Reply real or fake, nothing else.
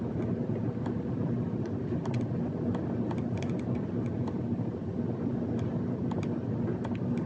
real